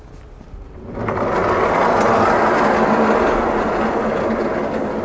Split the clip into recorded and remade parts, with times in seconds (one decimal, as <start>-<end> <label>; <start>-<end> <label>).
0.0-5.0 recorded

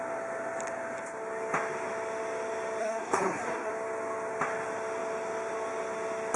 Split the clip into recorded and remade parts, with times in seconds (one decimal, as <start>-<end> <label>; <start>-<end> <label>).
0.0-2.8 recorded; 2.8-3.7 remade; 3.7-6.4 recorded